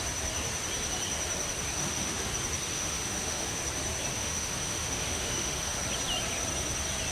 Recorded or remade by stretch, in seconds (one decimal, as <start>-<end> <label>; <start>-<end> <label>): 0.0-1.8 recorded; 1.8-2.3 remade; 2.3-2.7 recorded; 2.7-3.6 remade; 3.6-4.1 recorded; 4.1-5.8 remade; 5.8-7.1 recorded